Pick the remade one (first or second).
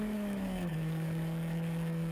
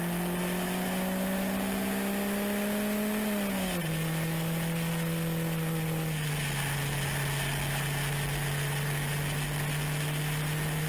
first